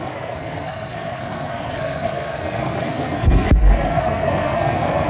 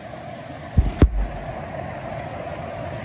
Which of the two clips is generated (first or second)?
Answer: first